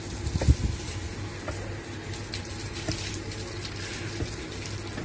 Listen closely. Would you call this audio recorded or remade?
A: recorded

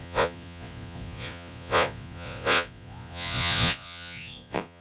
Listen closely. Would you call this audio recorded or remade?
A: remade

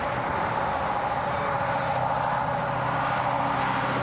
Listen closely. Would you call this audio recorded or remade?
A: recorded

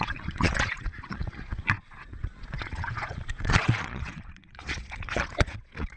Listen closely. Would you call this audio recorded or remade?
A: remade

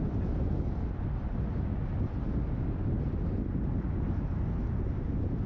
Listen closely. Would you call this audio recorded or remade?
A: recorded